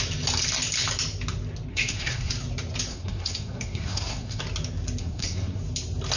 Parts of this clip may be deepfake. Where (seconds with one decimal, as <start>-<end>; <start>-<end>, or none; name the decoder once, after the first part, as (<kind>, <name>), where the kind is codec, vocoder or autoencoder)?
1.7-2.3 (codec, SNAC); 2.9-4.4; 5.0-5.6